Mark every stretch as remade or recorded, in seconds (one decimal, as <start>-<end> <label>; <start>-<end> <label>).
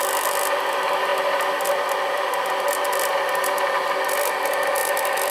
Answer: 0.0-5.3 recorded